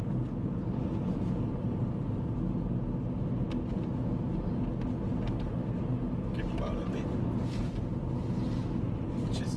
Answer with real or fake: real